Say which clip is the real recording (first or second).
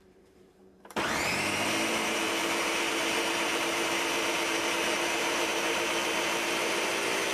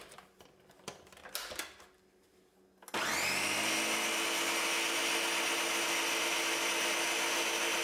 second